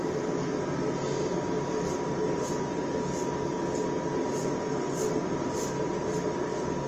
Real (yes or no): yes